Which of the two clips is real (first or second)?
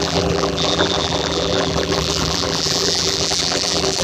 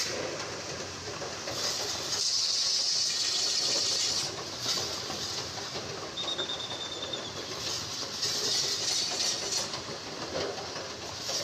second